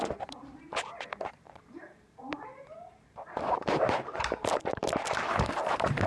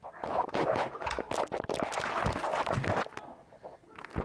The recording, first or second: second